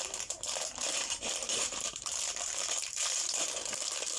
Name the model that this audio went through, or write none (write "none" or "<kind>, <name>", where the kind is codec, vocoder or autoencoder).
vocoder, BigVGAN v2